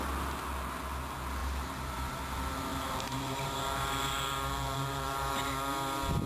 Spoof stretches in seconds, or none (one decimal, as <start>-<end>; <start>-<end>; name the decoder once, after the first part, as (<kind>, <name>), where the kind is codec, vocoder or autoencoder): 1.4-2.1 (vocoder, BigVGAN v2); 2.7-5.5